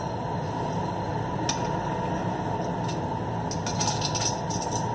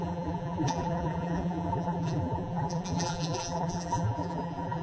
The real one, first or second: first